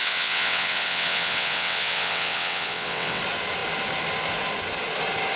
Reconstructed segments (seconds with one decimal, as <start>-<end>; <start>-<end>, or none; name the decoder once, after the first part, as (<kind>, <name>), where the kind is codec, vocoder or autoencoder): 0.0-3.2 (vocoder, WaveNeXt)